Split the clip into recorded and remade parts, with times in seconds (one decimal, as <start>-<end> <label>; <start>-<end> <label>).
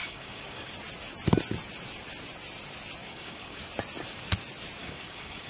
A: 0.0-0.7 remade; 0.7-3.0 recorded; 3.0-3.6 remade; 3.6-4.8 recorded; 4.8-5.5 remade